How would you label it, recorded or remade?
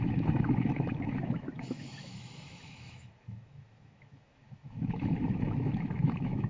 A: remade